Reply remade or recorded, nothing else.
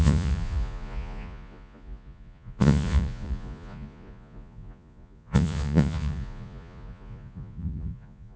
remade